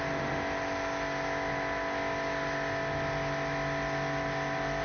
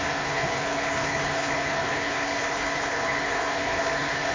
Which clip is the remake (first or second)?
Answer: second